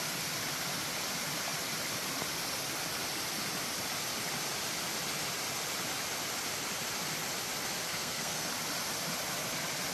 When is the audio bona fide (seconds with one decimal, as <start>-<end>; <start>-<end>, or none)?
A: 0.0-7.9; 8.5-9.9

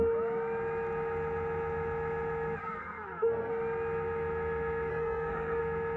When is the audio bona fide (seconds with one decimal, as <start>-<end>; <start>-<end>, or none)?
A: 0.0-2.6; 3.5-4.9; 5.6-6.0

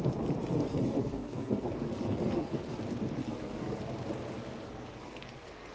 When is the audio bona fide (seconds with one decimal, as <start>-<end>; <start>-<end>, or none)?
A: 0.0-0.7; 2.8-3.2; 3.8-4.4

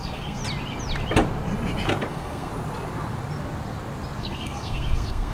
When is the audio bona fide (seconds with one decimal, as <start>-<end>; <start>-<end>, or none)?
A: 0.4-2.1; 2.5-4.2

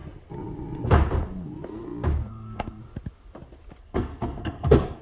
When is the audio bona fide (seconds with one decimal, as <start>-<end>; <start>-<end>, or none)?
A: 0.0-2.3; 2.8-3.8